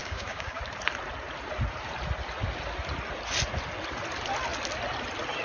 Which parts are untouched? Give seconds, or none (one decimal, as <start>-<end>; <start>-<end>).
0.6-5.4

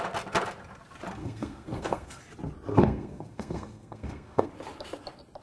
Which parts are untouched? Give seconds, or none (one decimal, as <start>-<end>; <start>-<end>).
0.0-1.2; 2.2-2.7; 4.5-5.4

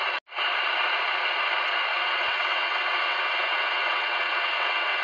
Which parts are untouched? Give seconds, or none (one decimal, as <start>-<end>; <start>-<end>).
0.0-1.9

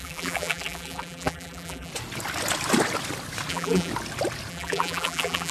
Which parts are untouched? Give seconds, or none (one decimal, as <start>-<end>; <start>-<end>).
1.9-3.5; 3.9-4.5

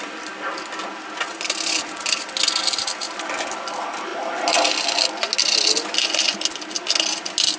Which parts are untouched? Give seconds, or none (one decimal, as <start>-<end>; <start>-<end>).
0.0-7.6

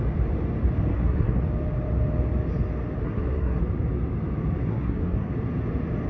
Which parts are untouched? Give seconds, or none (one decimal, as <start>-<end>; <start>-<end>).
0.0-0.9; 1.4-3.0; 3.6-4.7; 5.3-6.1

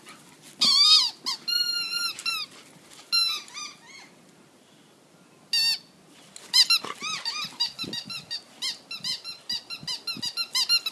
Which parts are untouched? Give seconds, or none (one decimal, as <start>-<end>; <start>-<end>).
0.0-10.9